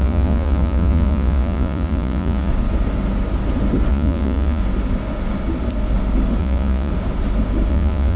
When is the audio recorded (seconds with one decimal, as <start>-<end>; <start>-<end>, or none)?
2.5-3.9; 4.6-6.4; 6.9-7.7